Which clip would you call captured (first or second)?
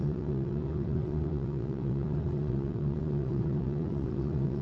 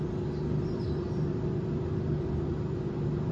second